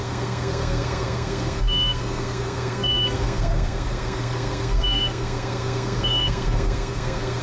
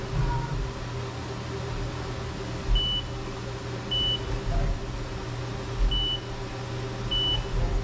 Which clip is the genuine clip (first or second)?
second